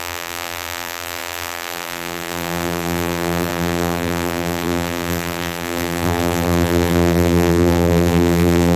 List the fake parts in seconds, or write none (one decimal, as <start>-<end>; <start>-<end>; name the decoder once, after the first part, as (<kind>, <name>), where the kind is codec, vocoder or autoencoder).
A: 0.0-8.8 (vocoder, BigVGAN v2)